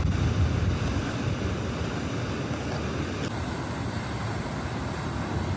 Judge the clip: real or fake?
real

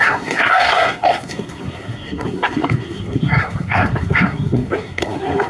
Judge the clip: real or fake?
fake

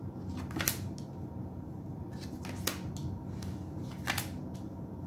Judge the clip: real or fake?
real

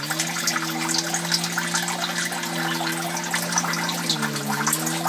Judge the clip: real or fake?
real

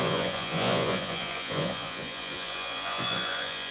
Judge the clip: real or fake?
fake